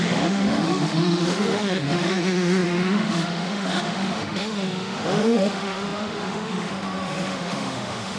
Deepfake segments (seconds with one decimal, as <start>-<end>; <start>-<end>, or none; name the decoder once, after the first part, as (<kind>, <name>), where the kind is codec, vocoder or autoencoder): 0.0-8.2 (autoencoder, DAC-VAE)

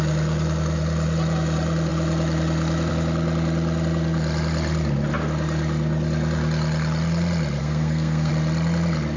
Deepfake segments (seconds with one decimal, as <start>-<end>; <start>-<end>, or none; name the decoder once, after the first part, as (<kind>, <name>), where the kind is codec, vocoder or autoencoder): 7.6-8.3 (codec, SNAC)

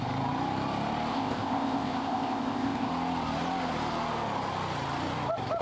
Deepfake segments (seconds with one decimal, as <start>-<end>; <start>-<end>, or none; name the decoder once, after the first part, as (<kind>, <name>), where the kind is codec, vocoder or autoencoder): 1.1-2.9 (codec, ZipCodec)

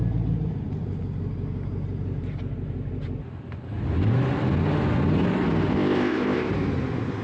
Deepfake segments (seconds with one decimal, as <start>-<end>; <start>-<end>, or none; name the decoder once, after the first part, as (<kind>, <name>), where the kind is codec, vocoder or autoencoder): 5.7-6.5 (codec, ZipCodec)